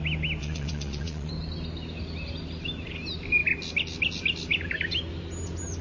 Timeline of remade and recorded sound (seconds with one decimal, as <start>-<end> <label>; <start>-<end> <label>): 0.0-0.4 recorded; 0.4-1.3 remade; 1.3-5.8 recorded